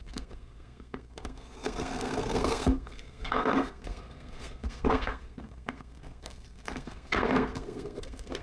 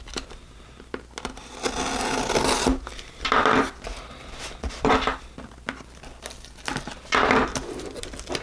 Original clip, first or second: second